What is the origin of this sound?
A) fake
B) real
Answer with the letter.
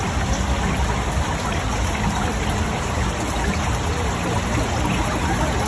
B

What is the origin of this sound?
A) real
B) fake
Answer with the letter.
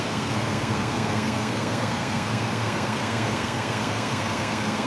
B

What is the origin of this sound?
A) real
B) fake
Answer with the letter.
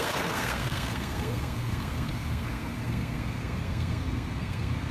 B